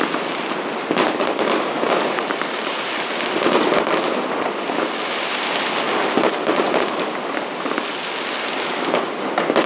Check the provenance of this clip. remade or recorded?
recorded